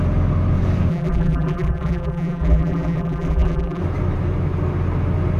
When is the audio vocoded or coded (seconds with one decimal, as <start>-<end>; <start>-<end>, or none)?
0.9-3.8